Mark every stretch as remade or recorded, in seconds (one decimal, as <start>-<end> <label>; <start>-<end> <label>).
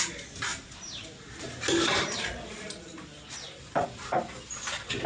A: 0.0-0.5 recorded; 0.5-2.6 remade; 2.6-5.1 recorded